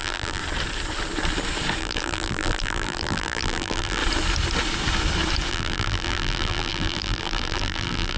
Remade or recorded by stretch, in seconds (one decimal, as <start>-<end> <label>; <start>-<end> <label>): 0.0-0.4 remade; 0.4-1.8 recorded; 1.8-4.0 remade; 4.0-5.5 recorded; 5.5-8.2 remade